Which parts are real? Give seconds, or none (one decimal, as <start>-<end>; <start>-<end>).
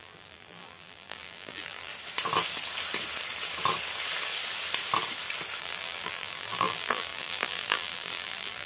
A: 1.9-5.6